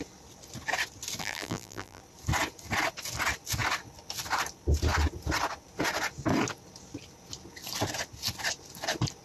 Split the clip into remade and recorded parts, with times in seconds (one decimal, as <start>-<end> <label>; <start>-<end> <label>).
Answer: 0.0-1.2 recorded; 1.2-2.0 remade; 2.0-9.2 recorded

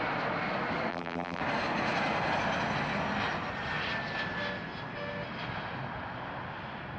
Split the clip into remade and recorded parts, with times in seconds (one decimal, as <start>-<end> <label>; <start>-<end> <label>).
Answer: 0.0-0.9 recorded; 0.9-1.4 remade; 1.4-7.0 recorded